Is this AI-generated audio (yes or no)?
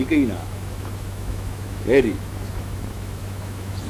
yes